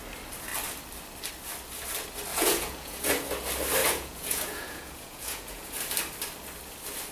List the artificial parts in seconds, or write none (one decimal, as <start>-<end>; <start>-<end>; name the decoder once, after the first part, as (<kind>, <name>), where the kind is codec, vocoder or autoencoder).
2.3-3.1 (vocoder, Vocos); 3.8-5.7